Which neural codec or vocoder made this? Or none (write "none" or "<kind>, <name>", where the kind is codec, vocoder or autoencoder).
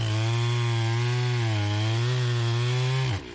none